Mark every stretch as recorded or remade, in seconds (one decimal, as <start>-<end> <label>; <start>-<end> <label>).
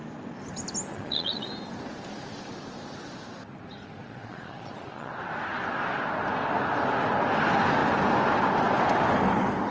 0.0-0.9 recorded; 0.9-1.5 remade; 1.5-4.0 recorded; 4.0-5.1 remade; 5.1-9.7 recorded